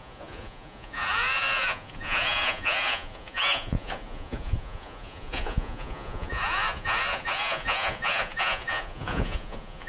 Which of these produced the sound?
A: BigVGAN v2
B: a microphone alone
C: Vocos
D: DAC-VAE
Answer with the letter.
C